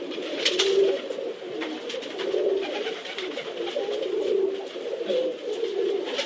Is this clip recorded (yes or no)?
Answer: yes